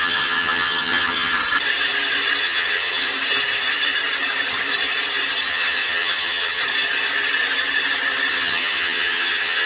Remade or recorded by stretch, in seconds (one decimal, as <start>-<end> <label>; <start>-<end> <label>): 0.0-1.4 remade; 1.4-2.4 recorded; 2.4-3.1 remade; 3.1-5.5 recorded; 5.5-6.6 remade; 6.6-8.3 recorded; 8.3-9.7 remade